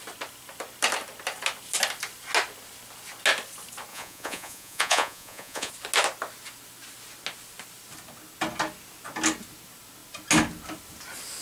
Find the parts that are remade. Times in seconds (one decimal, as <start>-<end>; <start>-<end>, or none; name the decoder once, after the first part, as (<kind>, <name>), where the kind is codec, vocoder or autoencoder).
3.9-5.7 (vocoder, Vocos)